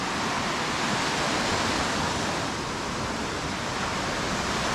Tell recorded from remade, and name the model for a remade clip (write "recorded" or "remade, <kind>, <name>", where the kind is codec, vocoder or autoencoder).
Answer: recorded